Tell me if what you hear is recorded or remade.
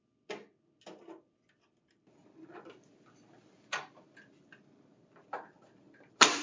recorded